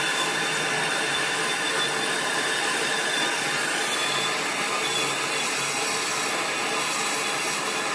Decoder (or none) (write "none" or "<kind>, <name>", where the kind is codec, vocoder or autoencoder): none